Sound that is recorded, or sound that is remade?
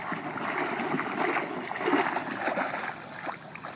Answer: recorded